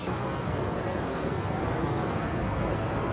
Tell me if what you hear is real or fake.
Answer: fake